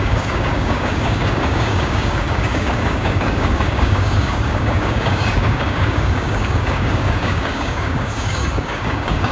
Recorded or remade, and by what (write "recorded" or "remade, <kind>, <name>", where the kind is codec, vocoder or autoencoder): remade, codec, DAC